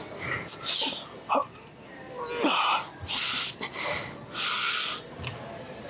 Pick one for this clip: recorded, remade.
recorded